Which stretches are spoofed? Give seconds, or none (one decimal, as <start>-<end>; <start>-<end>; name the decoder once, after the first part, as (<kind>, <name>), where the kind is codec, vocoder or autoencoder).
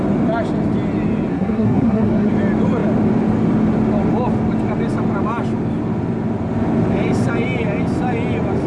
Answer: 1.3-2.3 (codec, SNAC)